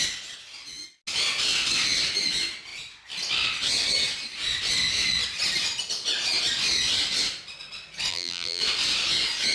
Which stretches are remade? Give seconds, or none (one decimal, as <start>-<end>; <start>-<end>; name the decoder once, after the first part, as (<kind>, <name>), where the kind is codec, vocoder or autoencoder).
8.1-8.6 (vocoder, BigVGAN v2)